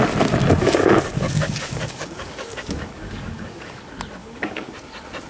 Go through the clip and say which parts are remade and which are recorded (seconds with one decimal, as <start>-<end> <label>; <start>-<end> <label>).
0.0-0.6 recorded; 0.6-3.8 remade; 3.8-4.2 recorded; 4.2-4.7 remade; 4.7-5.3 recorded